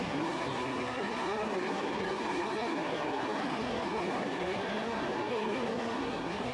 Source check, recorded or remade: remade